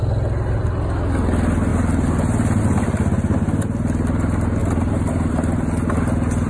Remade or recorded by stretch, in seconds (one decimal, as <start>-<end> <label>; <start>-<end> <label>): 0.0-4.6 recorded; 4.6-5.3 remade; 5.3-6.5 recorded